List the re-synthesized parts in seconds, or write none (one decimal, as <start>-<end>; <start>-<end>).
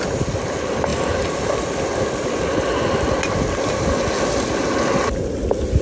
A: none